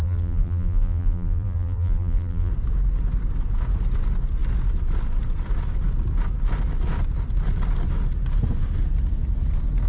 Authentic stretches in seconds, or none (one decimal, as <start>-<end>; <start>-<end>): 2.5-9.9